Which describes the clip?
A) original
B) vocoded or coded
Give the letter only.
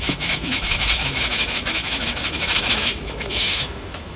B